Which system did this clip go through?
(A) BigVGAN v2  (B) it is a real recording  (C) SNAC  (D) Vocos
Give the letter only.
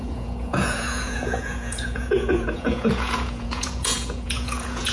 D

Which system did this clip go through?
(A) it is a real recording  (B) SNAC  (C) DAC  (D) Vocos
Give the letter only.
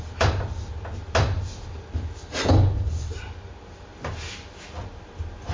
A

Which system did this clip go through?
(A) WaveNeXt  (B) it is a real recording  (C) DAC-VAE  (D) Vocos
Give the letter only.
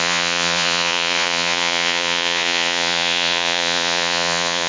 D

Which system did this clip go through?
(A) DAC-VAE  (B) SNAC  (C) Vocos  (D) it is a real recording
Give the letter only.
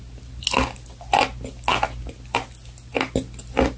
D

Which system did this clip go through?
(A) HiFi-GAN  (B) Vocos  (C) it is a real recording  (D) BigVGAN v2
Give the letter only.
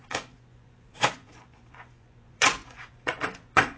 B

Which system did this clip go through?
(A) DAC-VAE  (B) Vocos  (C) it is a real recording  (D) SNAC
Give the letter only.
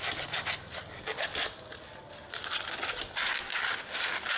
C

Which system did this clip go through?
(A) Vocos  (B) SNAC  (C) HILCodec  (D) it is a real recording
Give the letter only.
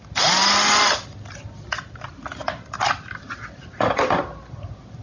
D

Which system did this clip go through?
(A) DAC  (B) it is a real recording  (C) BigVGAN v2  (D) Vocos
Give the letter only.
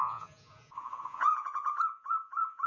D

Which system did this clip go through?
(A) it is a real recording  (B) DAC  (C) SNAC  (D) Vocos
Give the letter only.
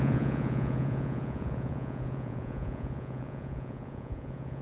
D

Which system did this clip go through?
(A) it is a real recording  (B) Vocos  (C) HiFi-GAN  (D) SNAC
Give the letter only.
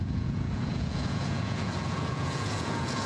B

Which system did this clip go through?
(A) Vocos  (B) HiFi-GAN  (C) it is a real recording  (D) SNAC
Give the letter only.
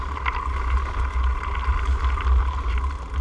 C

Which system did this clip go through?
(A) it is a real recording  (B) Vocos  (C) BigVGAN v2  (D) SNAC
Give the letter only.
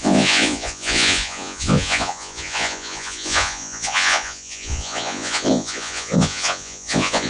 B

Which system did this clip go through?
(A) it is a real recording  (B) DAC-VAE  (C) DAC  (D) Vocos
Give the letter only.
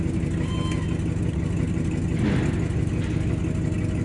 A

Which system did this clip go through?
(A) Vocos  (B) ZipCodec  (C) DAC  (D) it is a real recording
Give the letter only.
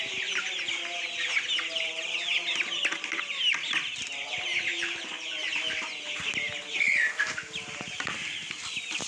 D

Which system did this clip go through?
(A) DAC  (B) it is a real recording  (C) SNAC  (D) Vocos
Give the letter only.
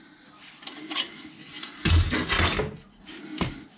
B